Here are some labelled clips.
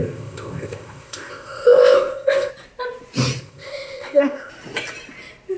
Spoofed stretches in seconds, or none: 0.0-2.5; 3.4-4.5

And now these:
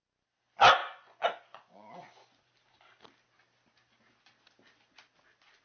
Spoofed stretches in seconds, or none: 0.8-2.5

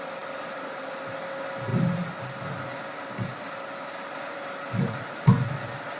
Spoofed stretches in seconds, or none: none

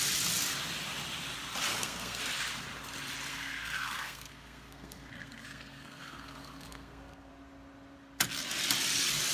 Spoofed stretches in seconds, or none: 1.7-2.2; 3.3-7.3

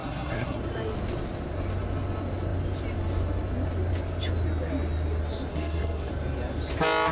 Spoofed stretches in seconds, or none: 0.0-0.6; 5.5-6.1